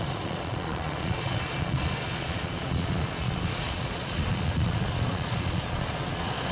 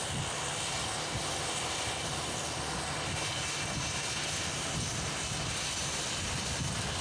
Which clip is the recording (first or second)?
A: second